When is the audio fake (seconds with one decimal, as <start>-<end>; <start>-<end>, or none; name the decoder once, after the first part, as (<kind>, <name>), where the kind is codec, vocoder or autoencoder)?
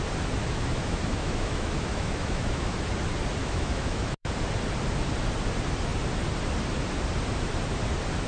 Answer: 0.4-2.7 (autoencoder, DAC-VAE); 3.4-4.3